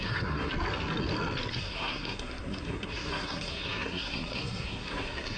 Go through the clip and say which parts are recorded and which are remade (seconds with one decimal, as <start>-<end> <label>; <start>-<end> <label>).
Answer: 0.0-0.5 remade; 0.5-1.5 recorded; 1.5-5.4 remade